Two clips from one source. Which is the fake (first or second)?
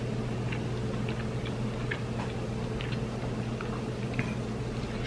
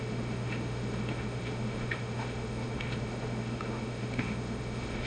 second